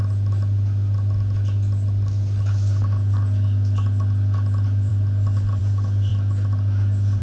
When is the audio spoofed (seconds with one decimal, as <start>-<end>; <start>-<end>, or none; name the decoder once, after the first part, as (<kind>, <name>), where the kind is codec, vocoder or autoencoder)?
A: none